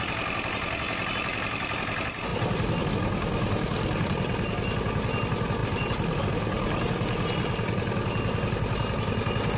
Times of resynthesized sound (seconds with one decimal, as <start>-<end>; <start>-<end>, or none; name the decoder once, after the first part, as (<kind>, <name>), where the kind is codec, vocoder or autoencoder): 5.6-6.2 (vocoder, BigVGAN v2)

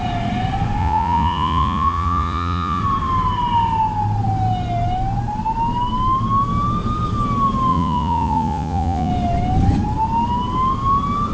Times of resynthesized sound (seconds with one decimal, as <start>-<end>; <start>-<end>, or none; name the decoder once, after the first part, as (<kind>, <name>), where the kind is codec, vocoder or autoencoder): 0.8-2.8 (vocoder, Vocos); 7.7-9.1

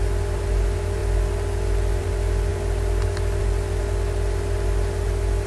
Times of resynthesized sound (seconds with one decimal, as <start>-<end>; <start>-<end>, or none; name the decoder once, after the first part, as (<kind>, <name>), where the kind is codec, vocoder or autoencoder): none

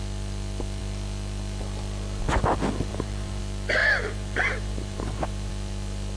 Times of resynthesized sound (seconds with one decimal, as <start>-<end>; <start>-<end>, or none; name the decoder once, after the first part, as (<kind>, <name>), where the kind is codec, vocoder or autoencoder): 2.9-3.4 (vocoder, BigVGAN v2); 3.8-5.5

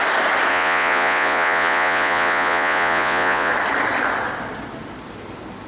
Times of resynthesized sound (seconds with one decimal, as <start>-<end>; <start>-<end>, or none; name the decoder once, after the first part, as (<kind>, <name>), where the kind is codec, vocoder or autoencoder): 0.5-3.5 (vocoder, Vocos)

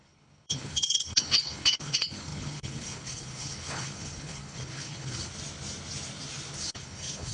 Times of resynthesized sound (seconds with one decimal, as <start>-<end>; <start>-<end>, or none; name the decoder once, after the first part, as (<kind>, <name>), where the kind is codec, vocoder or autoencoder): 0.0-5.3 (codec, HILCodec); 6.6-7.3

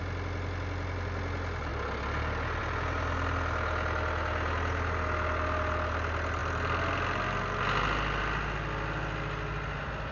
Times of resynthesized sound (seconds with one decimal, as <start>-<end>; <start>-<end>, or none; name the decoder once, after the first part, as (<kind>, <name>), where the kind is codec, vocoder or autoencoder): none

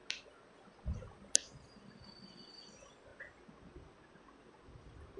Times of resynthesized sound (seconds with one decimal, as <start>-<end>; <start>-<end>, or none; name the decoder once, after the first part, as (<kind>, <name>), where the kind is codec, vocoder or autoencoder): none